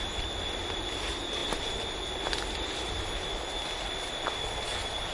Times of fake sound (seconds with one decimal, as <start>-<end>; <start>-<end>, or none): none

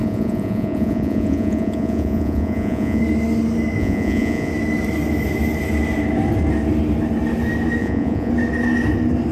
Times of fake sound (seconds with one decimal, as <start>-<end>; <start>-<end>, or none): 0.0-3.0; 3.8-4.5; 7.8-8.3

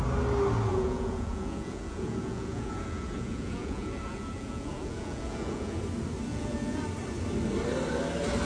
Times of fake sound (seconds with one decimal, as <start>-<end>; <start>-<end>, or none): 0.7-5.8; 6.3-6.8

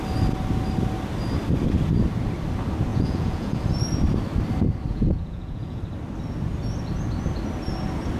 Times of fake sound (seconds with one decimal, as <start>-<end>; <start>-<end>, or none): 2.9-3.6; 4.9-5.8

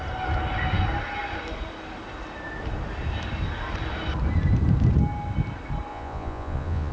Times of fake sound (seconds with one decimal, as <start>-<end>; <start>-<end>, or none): 5.9-6.9

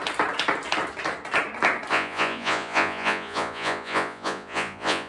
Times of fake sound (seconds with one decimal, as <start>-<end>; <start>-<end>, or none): 1.9-5.1